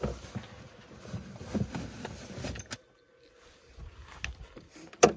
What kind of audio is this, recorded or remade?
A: recorded